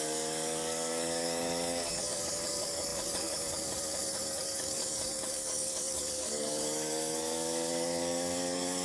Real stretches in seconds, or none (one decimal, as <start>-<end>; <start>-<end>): none